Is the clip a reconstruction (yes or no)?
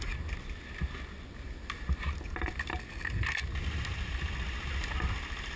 no